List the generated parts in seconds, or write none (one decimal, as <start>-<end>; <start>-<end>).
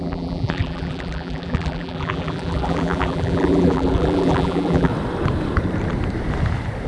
0.0-4.9